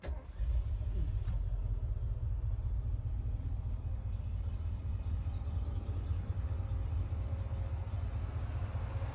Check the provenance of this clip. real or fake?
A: real